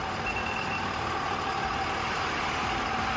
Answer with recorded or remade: recorded